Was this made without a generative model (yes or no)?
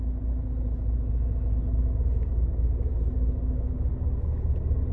yes